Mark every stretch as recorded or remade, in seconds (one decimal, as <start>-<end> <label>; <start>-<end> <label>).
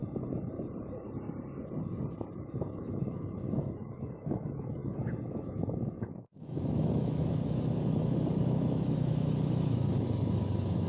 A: 0.0-2.4 recorded; 2.4-10.9 remade